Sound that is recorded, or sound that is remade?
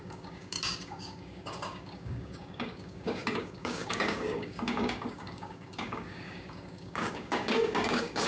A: remade